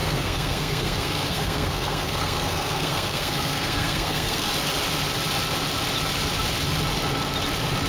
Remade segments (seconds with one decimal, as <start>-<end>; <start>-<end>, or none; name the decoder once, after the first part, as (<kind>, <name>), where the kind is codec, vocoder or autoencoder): 0.0-4.5 (codec, SNAC)